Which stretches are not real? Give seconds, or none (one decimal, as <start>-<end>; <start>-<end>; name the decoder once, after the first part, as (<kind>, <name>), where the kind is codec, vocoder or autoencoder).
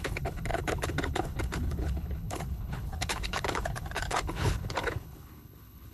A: 0.0-5.9 (codec, HILCodec)